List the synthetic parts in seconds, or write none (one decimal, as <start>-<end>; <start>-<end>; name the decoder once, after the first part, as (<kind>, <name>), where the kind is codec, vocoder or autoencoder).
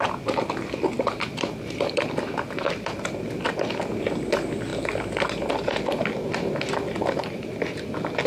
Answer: none